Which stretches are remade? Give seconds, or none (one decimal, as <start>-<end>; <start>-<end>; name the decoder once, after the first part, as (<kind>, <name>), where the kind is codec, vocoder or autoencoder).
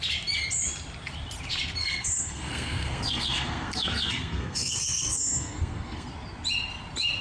1.8-6.1 (codec, SNAC)